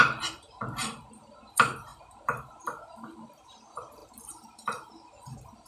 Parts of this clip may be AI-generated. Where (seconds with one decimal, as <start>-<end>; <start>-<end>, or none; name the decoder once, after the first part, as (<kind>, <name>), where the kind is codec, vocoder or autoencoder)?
0.0-5.7 (vocoder, BigVGAN v2)